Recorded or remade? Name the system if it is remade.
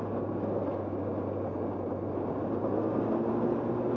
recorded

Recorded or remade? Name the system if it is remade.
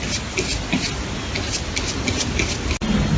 recorded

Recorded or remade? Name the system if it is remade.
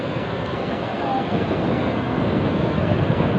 remade, codec, SNAC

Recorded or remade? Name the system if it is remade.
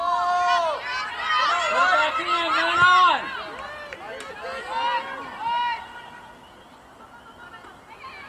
recorded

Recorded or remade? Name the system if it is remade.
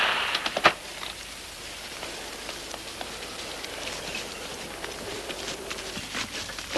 remade, vocoder, BigVGAN v2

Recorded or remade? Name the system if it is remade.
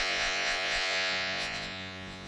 remade, vocoder, Vocos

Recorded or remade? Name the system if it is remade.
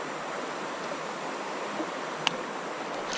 recorded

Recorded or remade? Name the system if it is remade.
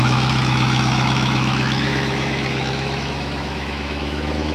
remade, autoencoder, DAC-VAE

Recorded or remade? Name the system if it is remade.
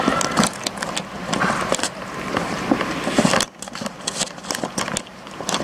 recorded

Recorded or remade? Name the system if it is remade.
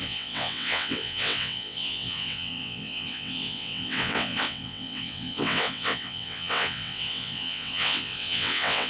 remade, vocoder, WaveNeXt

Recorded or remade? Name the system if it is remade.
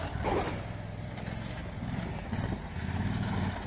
recorded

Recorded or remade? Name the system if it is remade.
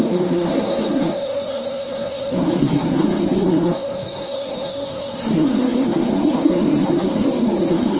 remade, codec, SNAC